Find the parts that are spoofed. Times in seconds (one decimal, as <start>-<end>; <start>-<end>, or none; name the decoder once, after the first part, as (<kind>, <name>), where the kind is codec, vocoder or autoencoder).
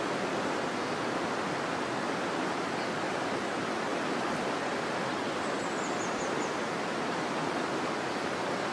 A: none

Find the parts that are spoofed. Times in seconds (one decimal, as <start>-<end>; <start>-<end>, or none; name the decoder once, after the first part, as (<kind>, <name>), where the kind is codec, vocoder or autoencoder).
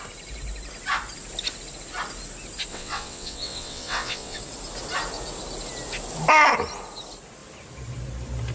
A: 2.7-4.4 (vocoder, WaveNeXt)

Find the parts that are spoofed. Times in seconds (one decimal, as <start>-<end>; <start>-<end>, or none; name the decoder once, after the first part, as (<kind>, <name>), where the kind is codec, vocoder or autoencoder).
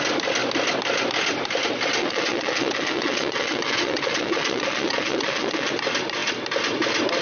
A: 2.0-5.7 (vocoder, WaveNeXt)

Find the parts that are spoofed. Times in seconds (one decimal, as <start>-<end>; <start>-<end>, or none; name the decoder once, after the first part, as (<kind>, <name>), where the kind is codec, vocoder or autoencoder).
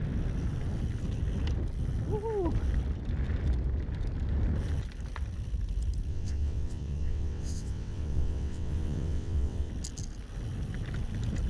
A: 6.1-9.7 (vocoder, WaveNeXt)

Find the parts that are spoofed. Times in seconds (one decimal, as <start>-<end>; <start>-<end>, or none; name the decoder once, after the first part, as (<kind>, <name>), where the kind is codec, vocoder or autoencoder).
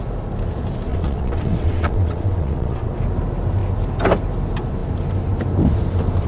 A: 0.9-2.9 (vocoder, WaveNeXt)